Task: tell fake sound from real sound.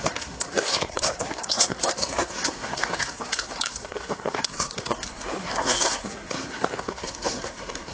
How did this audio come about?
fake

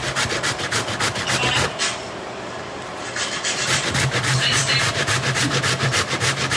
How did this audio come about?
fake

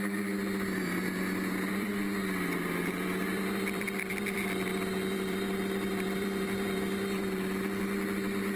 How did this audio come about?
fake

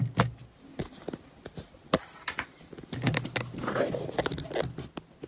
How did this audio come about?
real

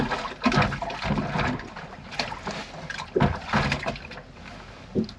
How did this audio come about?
real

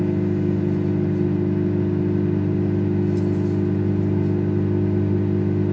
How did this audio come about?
real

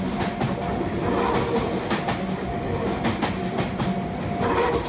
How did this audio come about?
real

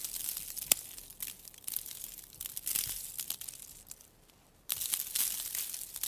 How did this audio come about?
real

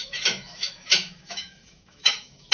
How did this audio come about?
fake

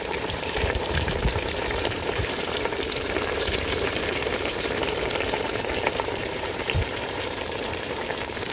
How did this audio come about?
fake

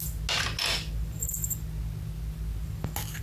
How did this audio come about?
real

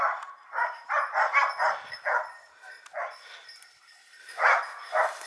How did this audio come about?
real